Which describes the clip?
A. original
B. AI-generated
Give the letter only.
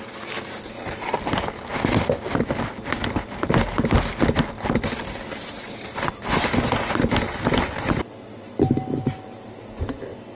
A